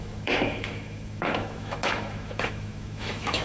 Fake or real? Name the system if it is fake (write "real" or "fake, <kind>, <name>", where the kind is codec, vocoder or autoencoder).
fake, autoencoder, DAC-VAE